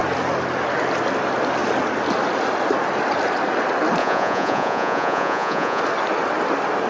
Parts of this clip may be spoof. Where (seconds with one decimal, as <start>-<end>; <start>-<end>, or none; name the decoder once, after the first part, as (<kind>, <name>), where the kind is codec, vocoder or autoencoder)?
4.0-5.8 (vocoder, Vocos)